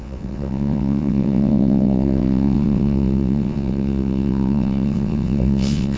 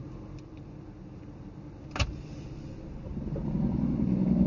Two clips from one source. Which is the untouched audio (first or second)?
second